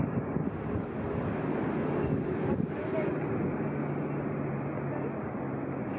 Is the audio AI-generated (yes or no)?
no